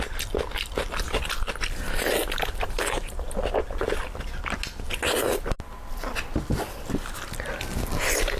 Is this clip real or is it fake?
real